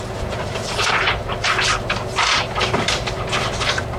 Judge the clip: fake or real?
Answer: fake